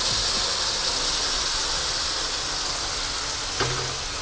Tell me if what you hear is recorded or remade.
recorded